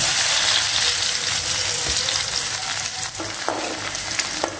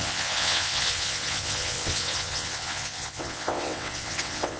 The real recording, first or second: first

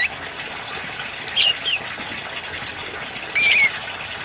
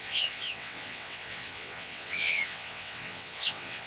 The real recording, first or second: first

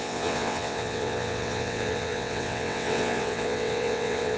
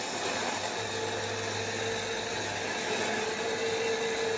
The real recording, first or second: second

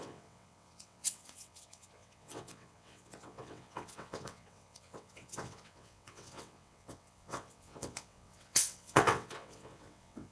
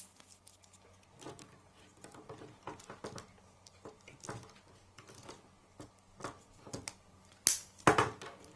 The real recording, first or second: second